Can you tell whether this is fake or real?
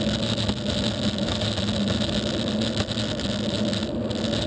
real